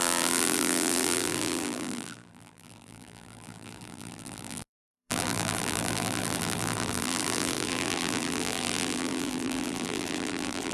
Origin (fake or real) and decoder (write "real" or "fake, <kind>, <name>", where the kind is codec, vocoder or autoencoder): fake, vocoder, BigVGAN v2